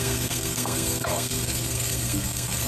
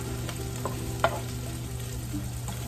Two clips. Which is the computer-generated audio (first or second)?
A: first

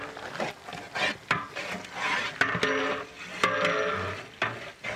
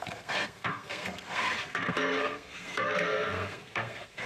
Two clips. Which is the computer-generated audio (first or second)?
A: second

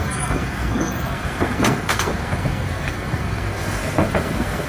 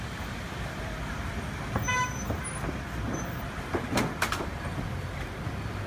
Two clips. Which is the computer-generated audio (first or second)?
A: first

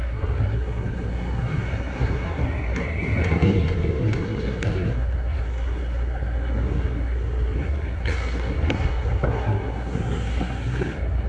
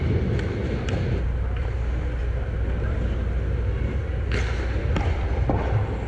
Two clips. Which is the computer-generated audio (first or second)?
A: first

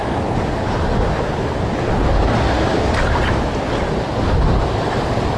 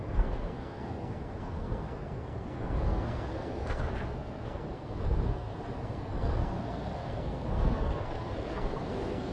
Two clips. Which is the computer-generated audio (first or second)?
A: second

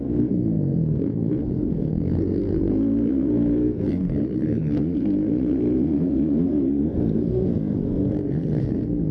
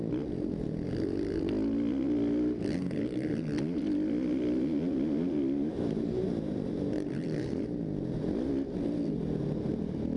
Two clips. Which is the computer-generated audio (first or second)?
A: first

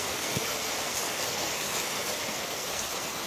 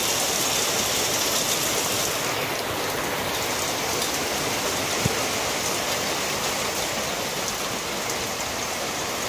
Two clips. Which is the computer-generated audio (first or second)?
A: first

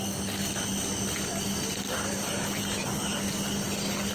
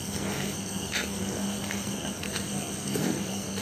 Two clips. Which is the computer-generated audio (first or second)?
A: second